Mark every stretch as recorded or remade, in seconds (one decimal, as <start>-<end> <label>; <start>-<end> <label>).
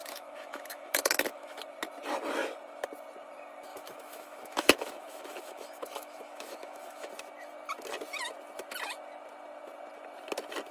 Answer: 0.0-1.6 remade; 1.6-3.7 recorded; 3.7-7.1 remade; 7.1-10.7 recorded